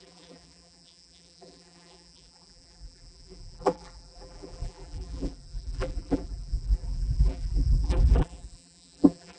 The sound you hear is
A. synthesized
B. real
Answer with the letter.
A